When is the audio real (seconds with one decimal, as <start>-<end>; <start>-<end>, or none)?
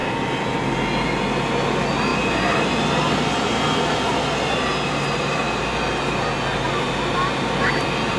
0.0-8.2